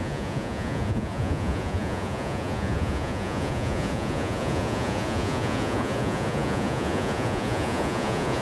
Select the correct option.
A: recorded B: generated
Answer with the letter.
B